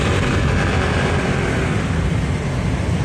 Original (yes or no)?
yes